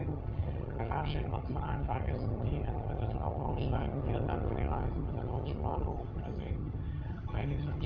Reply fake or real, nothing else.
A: fake